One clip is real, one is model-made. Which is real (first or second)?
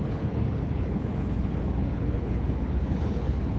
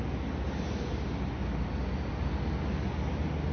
second